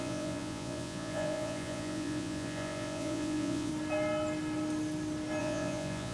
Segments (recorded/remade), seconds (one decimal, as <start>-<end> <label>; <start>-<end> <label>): 0.0-3.7 remade; 3.7-5.4 recorded; 5.4-6.1 remade